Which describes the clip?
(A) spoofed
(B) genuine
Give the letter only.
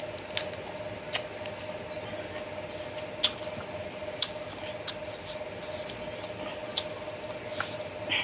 B